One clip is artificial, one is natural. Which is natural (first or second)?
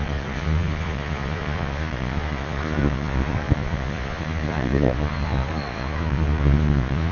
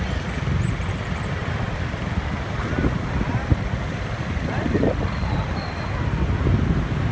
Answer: second